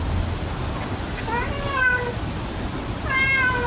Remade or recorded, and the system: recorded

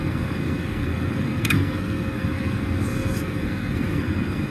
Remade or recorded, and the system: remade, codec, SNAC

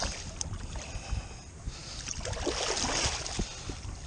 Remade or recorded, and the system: recorded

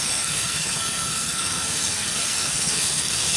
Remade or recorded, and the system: remade, codec, SNAC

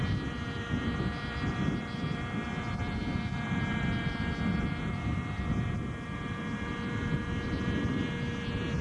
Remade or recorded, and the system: recorded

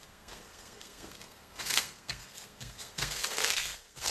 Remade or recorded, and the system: remade, codec, SNAC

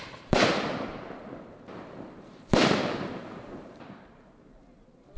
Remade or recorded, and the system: remade, vocoder, BigVGAN v2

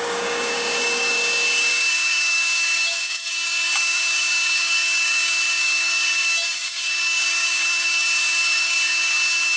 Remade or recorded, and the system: remade, codec, DAC